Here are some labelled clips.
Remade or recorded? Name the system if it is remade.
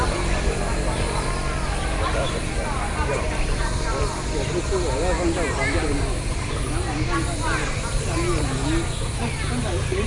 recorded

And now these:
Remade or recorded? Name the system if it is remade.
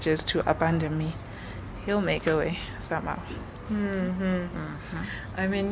recorded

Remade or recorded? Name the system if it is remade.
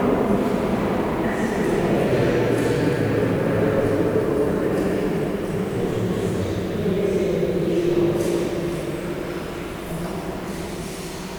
recorded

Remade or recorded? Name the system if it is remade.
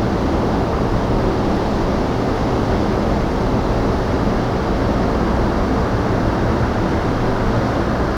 recorded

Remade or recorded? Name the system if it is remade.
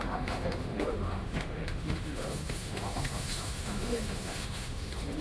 remade, autoencoder, DAC-VAE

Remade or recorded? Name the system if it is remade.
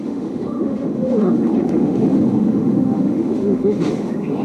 remade, autoencoder, DAC-VAE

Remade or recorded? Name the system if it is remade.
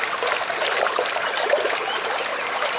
recorded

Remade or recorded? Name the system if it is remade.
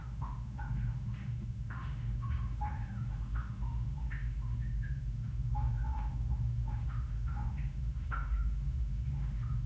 remade, autoencoder, DAC-VAE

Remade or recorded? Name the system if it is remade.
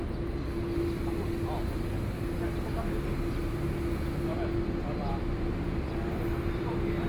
recorded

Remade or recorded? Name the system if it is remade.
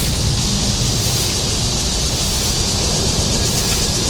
recorded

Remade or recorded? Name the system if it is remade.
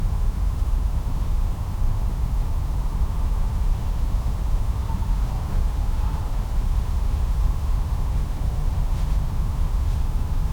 remade, autoencoder, DAC-VAE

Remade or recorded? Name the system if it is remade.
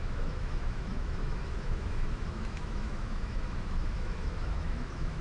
remade, autoencoder, DAC-VAE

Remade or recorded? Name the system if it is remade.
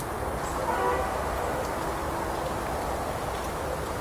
recorded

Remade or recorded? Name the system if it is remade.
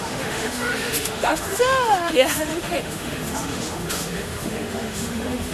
remade, autoencoder, DAC-VAE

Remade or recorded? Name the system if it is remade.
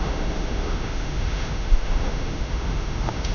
remade, autoencoder, DAC-VAE